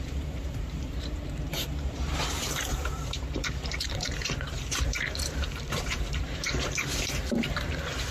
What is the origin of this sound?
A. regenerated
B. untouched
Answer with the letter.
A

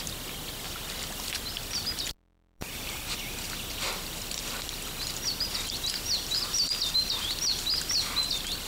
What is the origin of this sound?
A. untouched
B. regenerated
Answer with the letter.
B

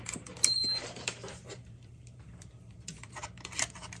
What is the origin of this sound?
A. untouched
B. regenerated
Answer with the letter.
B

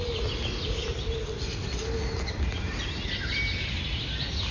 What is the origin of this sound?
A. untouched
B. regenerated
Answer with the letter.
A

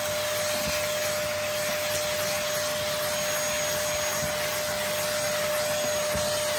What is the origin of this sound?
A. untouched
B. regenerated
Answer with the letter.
A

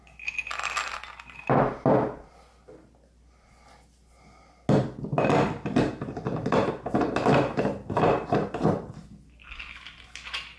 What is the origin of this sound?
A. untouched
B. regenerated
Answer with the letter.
A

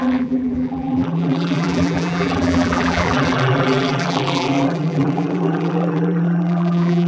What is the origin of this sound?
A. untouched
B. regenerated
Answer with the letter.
B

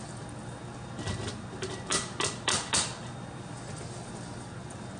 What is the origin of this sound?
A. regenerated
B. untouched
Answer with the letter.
B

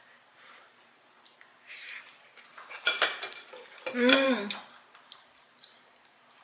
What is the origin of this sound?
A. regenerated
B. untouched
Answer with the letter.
A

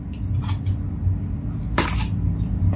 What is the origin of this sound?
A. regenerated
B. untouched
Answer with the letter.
B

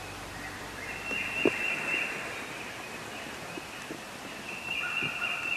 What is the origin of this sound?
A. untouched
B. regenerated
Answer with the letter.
A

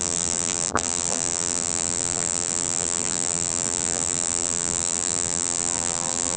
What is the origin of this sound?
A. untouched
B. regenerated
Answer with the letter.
B